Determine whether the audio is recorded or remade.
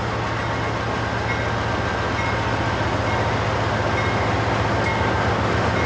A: recorded